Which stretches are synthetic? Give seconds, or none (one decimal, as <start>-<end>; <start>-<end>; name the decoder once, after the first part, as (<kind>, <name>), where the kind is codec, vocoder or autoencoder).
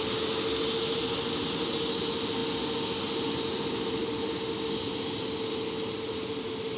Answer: none